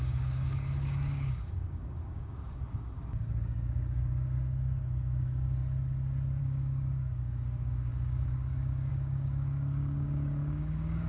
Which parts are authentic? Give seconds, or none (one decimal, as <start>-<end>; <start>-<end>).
5.6-6.4